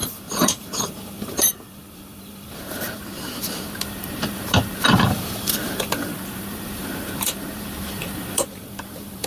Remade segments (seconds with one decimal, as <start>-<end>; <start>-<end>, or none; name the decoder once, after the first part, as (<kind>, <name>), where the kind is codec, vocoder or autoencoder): 0.0-9.3 (vocoder, BigVGAN v2)